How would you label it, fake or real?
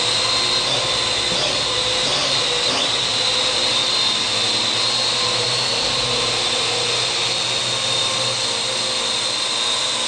real